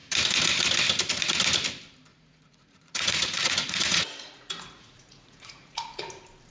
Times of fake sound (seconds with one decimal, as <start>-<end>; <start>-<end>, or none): 2.1-6.0